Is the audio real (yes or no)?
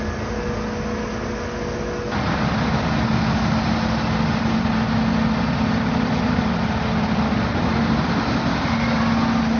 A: yes